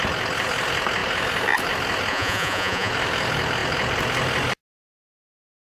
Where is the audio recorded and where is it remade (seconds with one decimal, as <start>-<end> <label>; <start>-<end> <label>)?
0.0-2.1 recorded; 2.1-2.9 remade; 2.9-5.7 recorded